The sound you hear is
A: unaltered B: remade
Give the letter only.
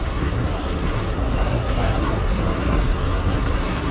B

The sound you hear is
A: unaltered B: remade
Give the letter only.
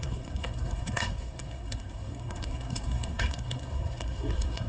B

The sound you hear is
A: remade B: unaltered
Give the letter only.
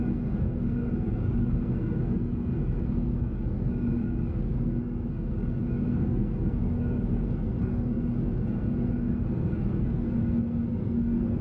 A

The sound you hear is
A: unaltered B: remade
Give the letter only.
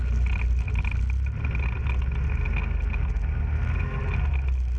A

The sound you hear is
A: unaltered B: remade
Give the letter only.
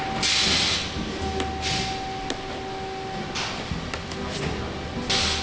A